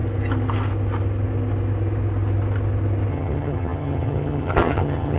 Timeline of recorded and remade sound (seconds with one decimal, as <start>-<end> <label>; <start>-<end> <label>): 0.0-3.1 recorded; 3.1-5.2 remade